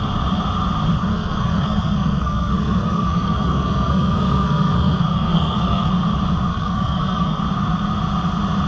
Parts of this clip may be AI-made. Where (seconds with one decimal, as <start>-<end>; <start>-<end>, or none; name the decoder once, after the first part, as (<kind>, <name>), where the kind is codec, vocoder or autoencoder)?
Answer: 1.1-5.9 (codec, SNAC); 6.5-7.4